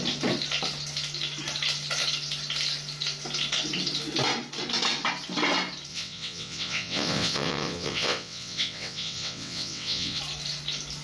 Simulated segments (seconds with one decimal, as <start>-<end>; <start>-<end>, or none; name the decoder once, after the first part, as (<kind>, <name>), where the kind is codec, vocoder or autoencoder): 5.9-10.2 (vocoder, WaveNeXt)

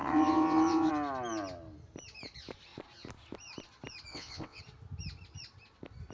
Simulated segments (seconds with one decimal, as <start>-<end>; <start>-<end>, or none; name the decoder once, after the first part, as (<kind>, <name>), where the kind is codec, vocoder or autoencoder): 0.0-0.9 (vocoder, WaveNeXt); 4.1-4.6

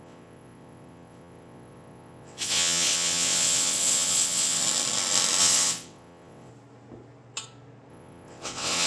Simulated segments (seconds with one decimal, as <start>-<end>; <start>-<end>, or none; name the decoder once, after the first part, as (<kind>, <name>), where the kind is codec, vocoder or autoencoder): 0.0-4.6 (vocoder, WaveNeXt); 5.4-6.5; 7.9-8.9

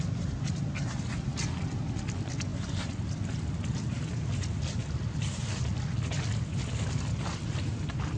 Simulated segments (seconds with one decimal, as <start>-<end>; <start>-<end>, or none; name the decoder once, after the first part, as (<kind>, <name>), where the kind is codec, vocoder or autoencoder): none

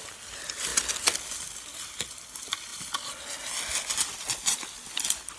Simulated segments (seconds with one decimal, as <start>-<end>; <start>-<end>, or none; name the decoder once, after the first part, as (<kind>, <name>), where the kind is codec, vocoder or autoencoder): none